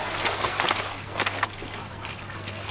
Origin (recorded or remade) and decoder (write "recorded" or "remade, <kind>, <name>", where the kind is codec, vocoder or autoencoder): remade, codec, SNAC